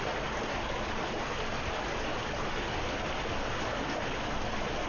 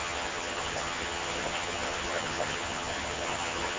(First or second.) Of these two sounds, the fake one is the second